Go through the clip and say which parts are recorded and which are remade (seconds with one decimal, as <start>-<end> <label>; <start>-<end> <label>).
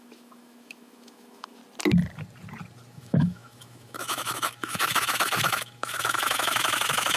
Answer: 0.0-1.6 remade; 1.6-2.9 recorded; 2.9-7.2 remade